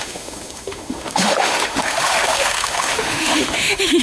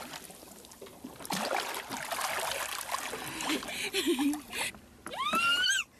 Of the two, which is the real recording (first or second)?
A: second